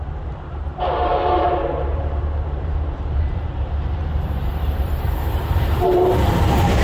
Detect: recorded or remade remade